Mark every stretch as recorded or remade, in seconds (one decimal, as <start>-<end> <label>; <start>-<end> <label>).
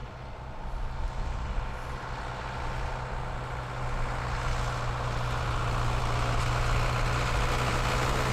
0.0-8.3 recorded